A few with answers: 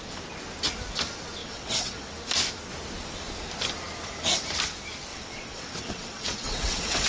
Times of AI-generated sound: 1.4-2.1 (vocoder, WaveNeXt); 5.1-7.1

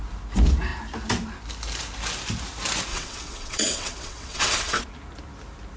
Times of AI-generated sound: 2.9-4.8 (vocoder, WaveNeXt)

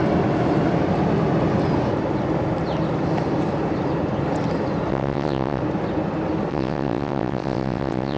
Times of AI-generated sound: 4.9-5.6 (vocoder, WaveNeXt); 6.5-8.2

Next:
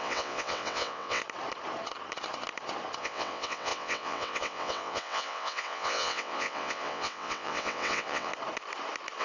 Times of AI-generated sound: 0.0-1.2 (vocoder, WaveNeXt); 3.0-8.3

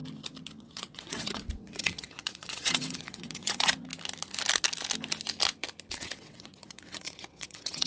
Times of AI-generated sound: 0.6-3.9 (vocoder, WaveNeXt); 5.9-7.9

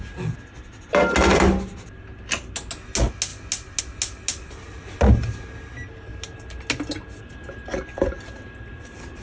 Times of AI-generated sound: none